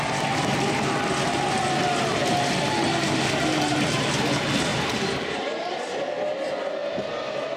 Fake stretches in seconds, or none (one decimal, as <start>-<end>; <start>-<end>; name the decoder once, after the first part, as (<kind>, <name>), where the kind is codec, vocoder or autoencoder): 4.7-5.9 (vocoder, BigVGAN v2); 6.8-7.6